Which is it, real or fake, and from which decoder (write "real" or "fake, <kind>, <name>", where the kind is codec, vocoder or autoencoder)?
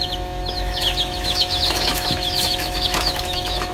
fake, autoencoder, DAC-VAE